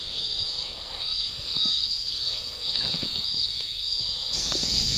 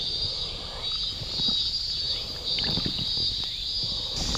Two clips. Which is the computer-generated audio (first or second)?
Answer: first